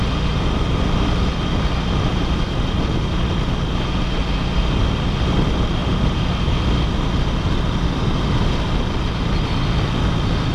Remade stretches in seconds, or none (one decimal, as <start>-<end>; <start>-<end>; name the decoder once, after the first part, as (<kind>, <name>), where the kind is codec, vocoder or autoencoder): none